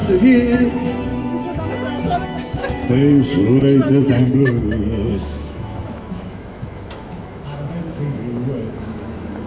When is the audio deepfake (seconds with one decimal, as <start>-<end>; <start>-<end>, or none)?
0.7-2.8; 4.2-9.5